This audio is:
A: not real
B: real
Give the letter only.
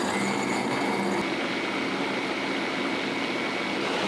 B